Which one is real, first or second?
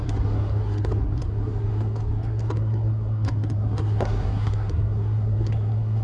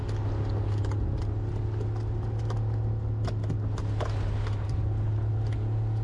second